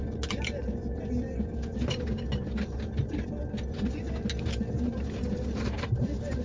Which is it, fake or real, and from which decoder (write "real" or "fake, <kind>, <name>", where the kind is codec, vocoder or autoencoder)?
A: real